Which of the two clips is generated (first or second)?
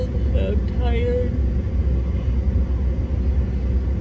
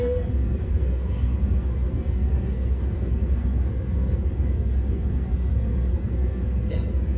second